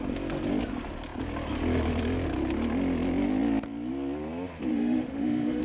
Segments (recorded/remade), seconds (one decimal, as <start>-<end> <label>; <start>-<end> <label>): 0.0-4.7 recorded; 4.7-5.6 remade